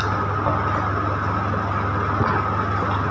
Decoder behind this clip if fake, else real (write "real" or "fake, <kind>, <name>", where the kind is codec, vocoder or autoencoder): real